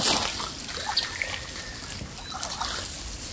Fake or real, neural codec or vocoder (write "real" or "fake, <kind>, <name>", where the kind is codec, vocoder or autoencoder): real